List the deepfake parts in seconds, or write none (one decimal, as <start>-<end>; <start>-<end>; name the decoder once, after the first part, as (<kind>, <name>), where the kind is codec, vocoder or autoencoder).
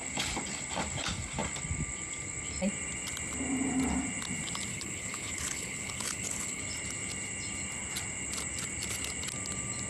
4.7-6.6 (codec, HILCodec)